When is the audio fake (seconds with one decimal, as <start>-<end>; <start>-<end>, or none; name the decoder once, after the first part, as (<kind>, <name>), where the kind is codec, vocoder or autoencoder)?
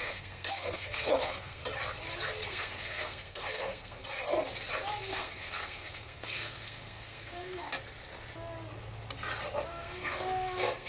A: 0.0-1.6 (codec, SNAC); 2.5-4.0; 5.1-7.7; 9.7-10.9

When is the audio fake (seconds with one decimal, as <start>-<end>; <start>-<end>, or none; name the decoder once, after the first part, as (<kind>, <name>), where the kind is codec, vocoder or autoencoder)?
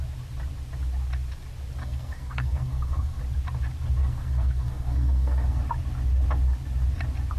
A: 1.8-3.2 (codec, SNAC); 4.0-5.6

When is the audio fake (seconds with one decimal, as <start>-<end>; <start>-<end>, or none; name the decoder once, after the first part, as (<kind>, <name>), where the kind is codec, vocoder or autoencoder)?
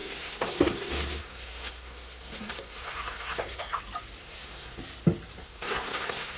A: 0.0-3.8 (codec, SNAC); 4.2-4.8; 5.4-6.4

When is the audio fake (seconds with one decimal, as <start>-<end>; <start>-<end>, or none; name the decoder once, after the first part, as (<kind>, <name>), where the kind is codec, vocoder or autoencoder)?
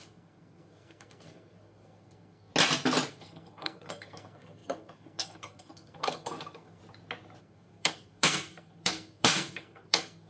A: 0.0-2.5 (codec, SNAC); 3.1-6.8; 7.4-10.3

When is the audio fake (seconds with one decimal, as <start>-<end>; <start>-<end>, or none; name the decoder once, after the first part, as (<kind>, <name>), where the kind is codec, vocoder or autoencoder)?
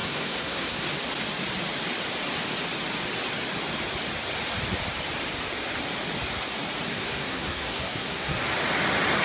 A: 0.0-0.9 (codec, SNAC); 6.9-8.4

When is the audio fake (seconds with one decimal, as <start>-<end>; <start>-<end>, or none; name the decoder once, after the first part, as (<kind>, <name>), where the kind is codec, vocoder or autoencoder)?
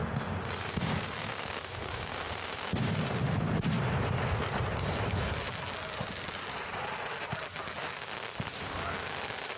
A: none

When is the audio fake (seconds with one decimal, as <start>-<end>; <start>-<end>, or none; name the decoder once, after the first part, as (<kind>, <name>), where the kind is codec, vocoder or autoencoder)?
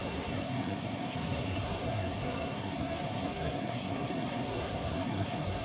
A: 0.0-5.6 (codec, SNAC)